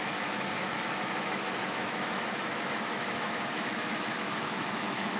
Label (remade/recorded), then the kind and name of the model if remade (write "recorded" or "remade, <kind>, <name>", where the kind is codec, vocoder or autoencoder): remade, autoencoder, DAC-VAE